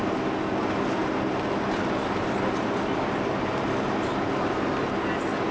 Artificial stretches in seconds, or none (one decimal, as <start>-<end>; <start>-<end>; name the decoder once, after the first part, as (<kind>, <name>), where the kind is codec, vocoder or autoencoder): none